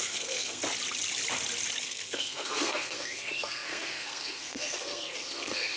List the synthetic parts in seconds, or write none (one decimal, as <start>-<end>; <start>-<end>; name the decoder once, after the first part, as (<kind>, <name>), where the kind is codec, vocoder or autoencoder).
0.0-0.6 (codec, SNAC); 1.8-5.8